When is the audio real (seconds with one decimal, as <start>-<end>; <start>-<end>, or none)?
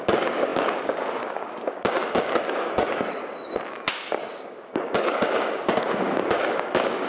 3.2-3.9